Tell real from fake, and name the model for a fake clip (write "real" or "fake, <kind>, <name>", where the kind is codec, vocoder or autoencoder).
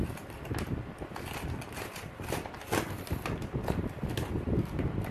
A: real